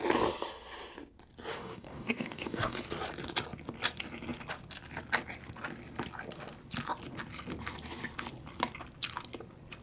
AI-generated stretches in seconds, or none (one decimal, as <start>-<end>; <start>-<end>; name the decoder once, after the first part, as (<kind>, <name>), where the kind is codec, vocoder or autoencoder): 1.5-2.8 (codec, DAC)